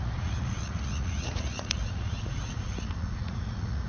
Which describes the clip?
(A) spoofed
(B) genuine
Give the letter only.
A